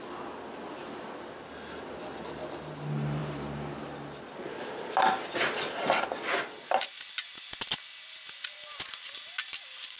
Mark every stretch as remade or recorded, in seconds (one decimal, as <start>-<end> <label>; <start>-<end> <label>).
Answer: 0.0-10.0 recorded